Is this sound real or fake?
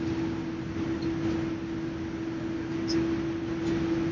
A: real